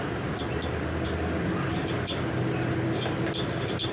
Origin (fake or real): real